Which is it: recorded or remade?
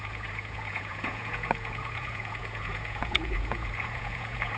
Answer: remade